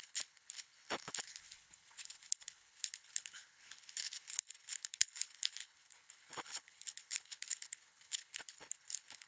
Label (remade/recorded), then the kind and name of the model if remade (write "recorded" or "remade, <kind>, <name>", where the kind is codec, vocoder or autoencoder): remade, codec, HILCodec